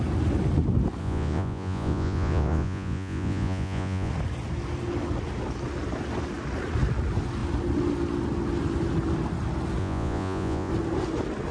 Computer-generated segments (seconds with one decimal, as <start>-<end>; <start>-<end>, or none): 1.0-4.1; 9.8-10.7